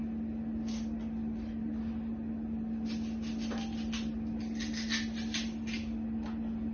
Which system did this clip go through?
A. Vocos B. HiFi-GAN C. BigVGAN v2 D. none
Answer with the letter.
D